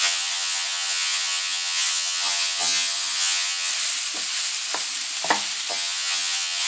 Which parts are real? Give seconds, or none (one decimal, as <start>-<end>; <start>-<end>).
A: 3.7-5.7